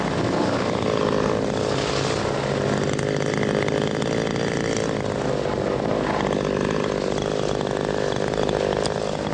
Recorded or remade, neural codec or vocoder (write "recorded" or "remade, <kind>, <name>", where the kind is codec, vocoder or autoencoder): recorded